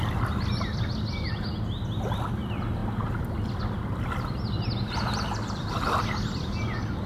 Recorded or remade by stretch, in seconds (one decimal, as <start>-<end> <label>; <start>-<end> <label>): 0.0-7.1 recorded